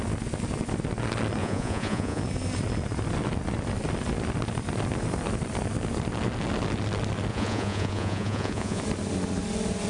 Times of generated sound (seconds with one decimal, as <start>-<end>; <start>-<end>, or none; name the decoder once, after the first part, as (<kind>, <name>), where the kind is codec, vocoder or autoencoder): 1.4-2.2 (vocoder, Vocos); 7.3-8.8